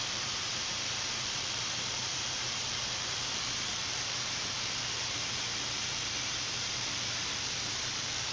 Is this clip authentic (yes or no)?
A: no